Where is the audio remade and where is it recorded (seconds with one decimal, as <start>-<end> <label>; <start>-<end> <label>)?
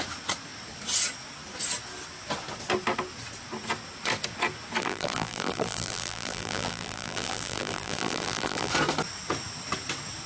0.0-4.8 recorded; 4.8-8.7 remade; 8.7-10.3 recorded